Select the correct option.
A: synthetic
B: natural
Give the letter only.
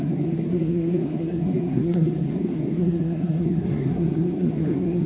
A